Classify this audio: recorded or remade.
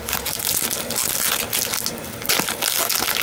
recorded